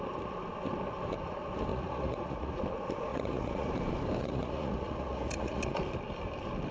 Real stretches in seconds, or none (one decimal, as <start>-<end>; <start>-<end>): 0.0-1.7; 2.6-3.1; 3.8-4.2; 5.8-6.7

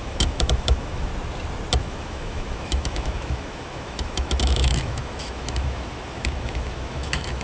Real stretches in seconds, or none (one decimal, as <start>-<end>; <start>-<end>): 1.1-1.8

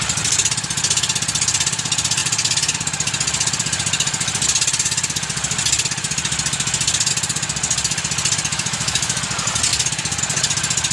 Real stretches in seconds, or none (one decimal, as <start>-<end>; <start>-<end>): 0.0-8.5; 9.2-10.9

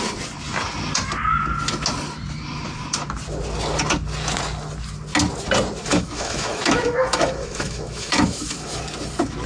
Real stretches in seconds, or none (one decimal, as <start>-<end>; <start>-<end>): 0.0-5.9; 8.8-9.5

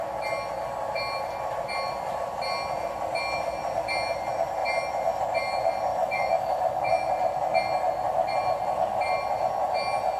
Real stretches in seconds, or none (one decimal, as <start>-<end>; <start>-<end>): 0.0-5.9; 6.9-10.2

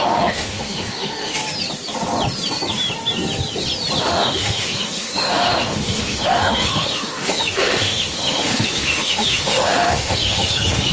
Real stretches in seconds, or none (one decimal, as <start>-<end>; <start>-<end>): 1.4-4.0

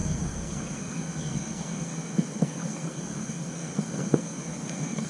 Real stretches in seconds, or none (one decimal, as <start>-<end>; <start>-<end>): none